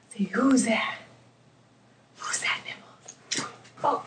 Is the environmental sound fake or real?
real